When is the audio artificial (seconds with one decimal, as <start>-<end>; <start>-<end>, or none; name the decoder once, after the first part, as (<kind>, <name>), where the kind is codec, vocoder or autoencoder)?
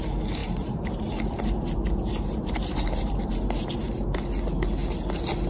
0.4-3.7 (vocoder, BigVGAN v2)